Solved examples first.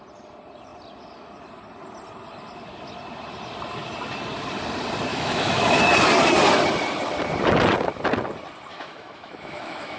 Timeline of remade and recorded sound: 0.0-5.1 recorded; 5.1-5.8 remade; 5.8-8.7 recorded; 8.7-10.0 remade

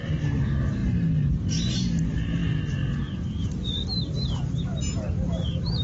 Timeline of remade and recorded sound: 0.0-5.8 recorded